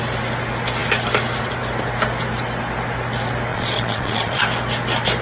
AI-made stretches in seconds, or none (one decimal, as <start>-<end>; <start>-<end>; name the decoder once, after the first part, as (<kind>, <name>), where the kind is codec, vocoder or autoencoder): 3.5-4.4 (vocoder, Vocos)